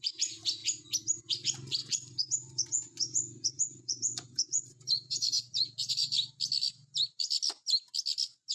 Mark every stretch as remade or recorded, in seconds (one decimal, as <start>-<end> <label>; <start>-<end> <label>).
0.0-1.8 recorded; 1.8-5.9 remade; 5.9-8.5 recorded